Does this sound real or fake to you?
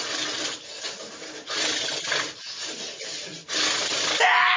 real